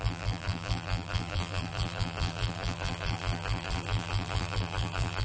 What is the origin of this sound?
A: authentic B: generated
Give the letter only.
B